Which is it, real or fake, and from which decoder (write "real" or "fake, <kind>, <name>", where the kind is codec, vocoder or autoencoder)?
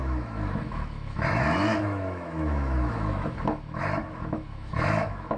fake, autoencoder, DAC-VAE